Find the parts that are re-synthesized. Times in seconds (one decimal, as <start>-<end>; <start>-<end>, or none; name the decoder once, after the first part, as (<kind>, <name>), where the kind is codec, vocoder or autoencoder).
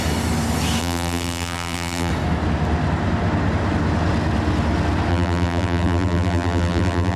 0.8-2.1 (vocoder, BigVGAN v2); 5.1-7.2